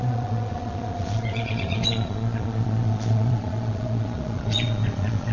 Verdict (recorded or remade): remade